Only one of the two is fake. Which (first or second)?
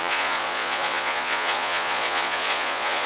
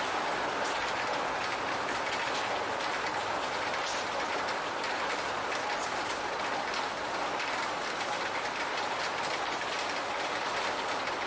first